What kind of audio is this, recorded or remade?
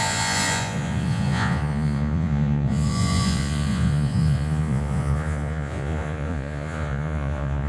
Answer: remade